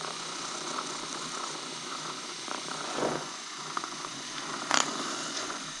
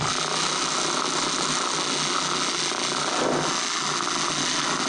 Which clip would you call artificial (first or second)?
first